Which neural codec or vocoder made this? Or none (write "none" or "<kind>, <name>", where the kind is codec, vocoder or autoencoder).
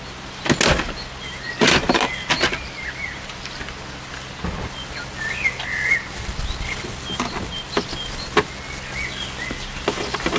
none